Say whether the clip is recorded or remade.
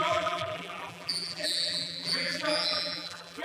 remade